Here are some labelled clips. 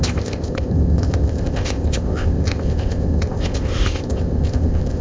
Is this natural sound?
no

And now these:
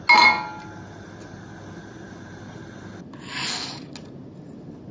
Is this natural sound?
yes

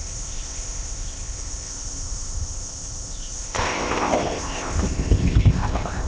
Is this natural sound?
no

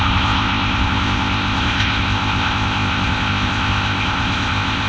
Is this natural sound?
no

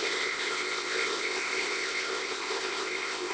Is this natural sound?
no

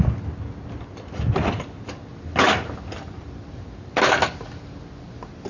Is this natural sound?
yes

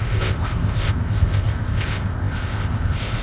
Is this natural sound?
no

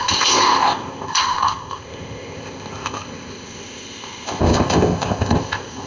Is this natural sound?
no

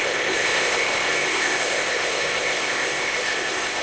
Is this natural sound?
no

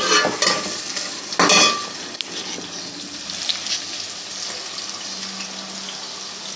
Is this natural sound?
yes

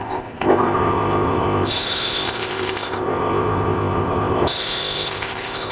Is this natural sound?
no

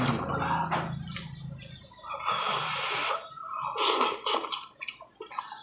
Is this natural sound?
yes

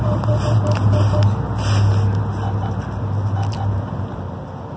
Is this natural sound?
yes